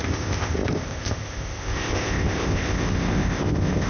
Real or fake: fake